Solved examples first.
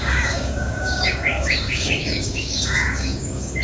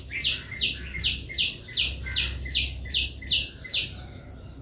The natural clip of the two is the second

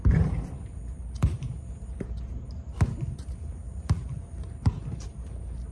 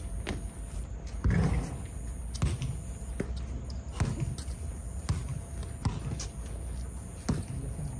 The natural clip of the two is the second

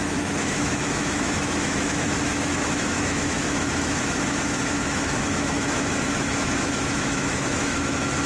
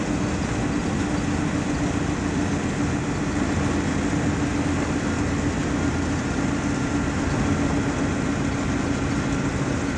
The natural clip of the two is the second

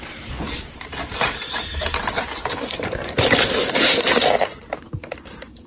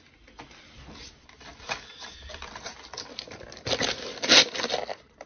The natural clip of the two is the second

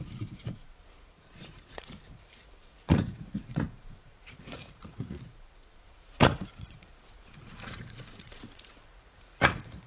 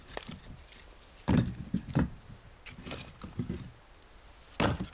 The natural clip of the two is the second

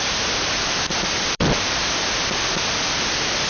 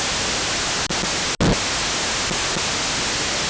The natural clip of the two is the second